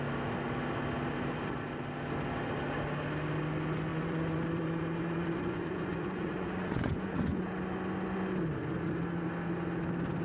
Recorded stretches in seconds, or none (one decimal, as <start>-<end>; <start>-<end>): 0.0-3.9; 7.5-10.2